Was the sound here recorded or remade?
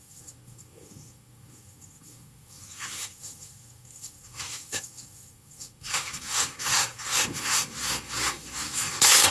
remade